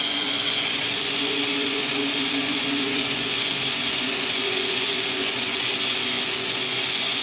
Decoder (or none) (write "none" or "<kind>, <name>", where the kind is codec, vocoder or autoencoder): vocoder, Vocos